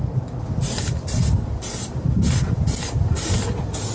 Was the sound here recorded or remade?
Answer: recorded